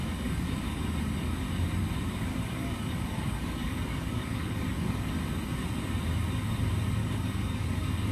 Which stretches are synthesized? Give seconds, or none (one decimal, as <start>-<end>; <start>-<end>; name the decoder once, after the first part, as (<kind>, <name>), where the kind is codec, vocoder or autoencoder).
0.0-0.8 (codec, DAC); 2.3-5.1; 7.0-8.1